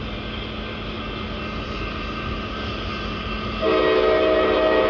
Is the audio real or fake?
real